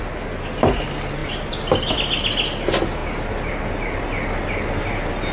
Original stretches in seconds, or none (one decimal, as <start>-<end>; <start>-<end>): 0.0-1.2; 1.9-3.0; 4.0-5.3